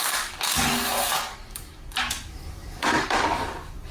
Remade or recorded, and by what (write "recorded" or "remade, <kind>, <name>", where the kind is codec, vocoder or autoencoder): remade, codec, DAC